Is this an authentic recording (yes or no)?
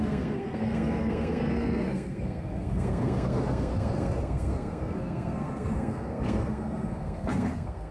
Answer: no